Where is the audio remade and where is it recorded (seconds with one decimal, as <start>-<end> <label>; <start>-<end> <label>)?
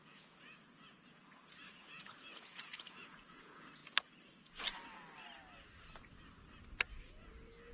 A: 0.0-3.8 remade; 3.8-7.7 recorded